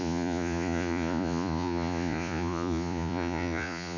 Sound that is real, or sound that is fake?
fake